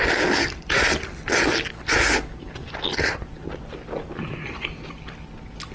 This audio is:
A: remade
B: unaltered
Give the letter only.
B